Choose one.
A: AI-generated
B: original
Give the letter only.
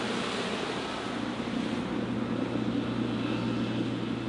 B